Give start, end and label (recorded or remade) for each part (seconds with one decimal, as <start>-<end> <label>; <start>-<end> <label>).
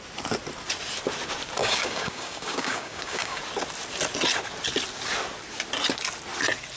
0.0-1.6 recorded; 1.6-3.4 remade; 3.4-6.8 recorded